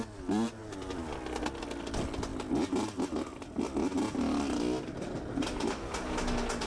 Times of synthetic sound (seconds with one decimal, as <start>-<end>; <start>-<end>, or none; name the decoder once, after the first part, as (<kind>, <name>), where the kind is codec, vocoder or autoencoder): none